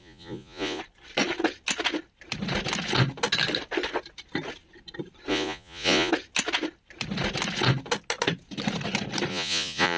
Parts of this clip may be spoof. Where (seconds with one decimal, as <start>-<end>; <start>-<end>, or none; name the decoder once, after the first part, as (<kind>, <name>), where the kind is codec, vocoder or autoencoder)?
0.0-0.8 (vocoder, Vocos); 5.3-6.1; 9.3-10.0

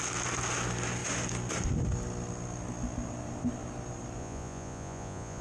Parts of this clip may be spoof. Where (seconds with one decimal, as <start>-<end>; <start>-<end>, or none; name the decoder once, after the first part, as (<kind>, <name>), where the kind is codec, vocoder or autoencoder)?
4.2-5.4 (vocoder, Vocos)

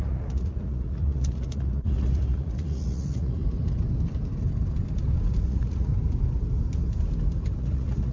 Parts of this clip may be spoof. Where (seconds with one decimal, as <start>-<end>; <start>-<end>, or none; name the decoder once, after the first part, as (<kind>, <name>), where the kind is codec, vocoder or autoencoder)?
0.0-3.4 (vocoder, Vocos); 5.4-5.9; 7.6-8.1

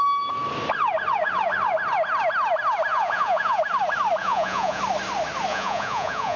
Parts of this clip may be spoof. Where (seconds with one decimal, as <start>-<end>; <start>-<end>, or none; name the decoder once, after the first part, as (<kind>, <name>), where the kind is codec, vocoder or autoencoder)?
2.9-3.6 (vocoder, Vocos); 4.2-4.8; 5.5-6.4

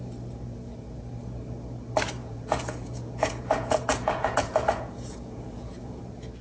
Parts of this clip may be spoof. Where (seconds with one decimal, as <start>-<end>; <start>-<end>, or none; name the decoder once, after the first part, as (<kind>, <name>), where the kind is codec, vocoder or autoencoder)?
2.2-6.0 (vocoder, Vocos)

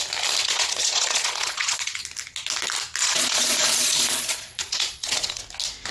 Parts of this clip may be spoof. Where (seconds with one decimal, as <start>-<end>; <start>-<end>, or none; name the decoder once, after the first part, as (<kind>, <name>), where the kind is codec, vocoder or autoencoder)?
0.4-2.0 (vocoder, Vocos); 3.0-5.4

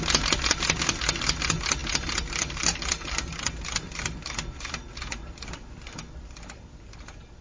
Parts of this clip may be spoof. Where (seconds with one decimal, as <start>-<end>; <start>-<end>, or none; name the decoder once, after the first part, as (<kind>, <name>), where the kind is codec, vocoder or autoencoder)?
none

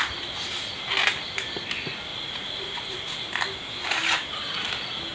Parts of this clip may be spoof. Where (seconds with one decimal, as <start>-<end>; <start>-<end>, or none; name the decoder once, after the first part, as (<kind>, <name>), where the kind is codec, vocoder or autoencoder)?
2.1-3.3 (vocoder, Vocos)